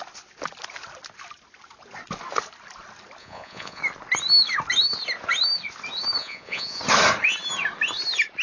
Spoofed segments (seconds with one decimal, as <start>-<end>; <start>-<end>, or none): 3.2-3.8; 6.2-6.8